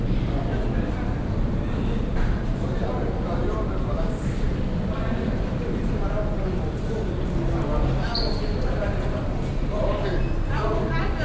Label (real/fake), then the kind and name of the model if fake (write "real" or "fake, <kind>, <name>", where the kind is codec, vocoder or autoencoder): real